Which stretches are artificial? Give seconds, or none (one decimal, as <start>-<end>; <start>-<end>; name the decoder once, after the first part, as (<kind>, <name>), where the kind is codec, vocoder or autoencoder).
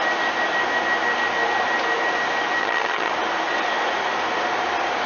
2.6-3.1 (vocoder, HiFi-GAN)